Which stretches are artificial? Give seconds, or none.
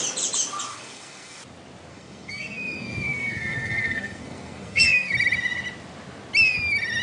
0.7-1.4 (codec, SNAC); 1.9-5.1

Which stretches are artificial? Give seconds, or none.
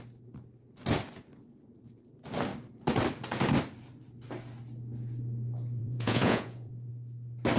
5.8-6.9 (vocoder, Vocos)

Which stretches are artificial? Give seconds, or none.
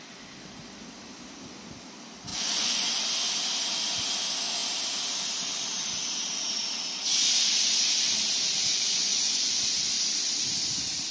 2.3-2.9 (vocoder, Vocos); 8.7-9.5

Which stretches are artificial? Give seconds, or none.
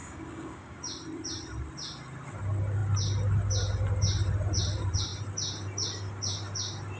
0.0-0.8 (codec, DAC)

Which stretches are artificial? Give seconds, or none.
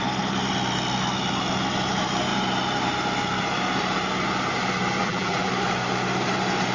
5.0-5.5 (vocoder, BigVGAN v2)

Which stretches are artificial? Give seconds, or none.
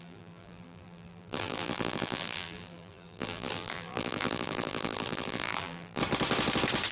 0.0-6.0 (vocoder, BigVGAN v2)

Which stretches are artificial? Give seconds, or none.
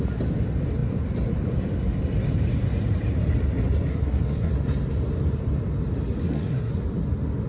3.9-4.5 (codec, SNAC); 6.2-6.7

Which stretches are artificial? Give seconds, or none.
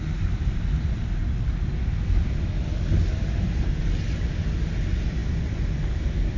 none